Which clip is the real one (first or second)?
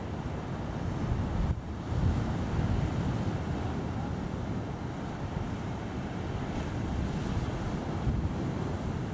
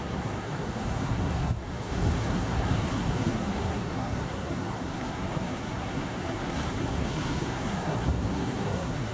first